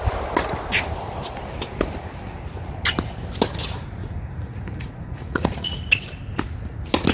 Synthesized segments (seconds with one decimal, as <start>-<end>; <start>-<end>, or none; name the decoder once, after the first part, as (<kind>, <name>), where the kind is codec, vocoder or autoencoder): 4.0-5.8 (vocoder, Vocos)